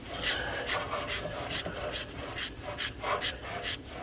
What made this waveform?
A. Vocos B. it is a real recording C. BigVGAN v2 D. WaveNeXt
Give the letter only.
B